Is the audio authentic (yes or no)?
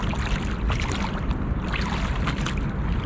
yes